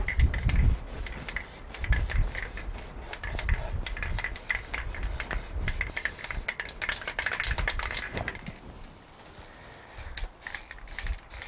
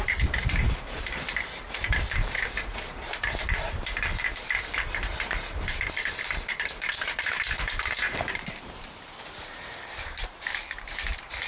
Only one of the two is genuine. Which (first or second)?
first